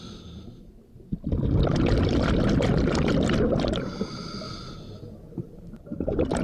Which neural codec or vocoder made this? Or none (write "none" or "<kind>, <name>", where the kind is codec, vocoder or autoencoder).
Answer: none